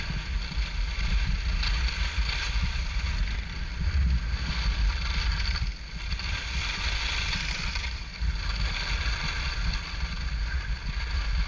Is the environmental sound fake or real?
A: real